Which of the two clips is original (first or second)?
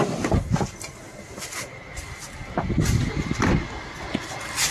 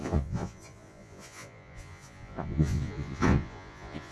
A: first